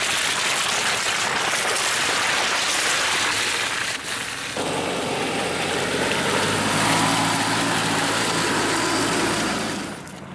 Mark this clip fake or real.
real